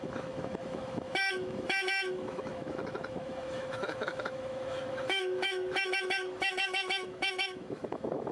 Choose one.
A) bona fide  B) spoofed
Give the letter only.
B